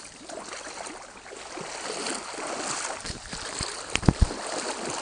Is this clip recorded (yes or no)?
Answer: yes